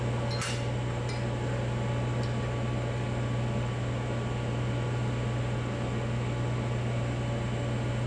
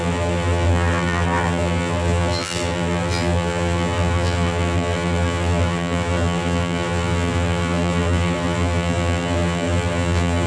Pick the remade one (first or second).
second